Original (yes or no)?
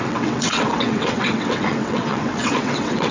no